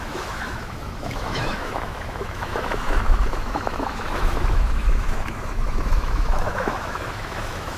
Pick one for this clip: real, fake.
fake